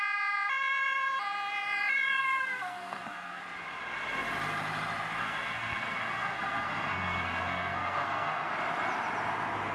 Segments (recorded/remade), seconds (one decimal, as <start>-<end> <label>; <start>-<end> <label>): 0.0-2.2 recorded; 2.2-3.4 remade; 3.4-5.2 recorded; 5.2-8.5 remade; 8.5-9.7 recorded